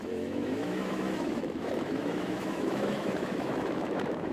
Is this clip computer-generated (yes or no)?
yes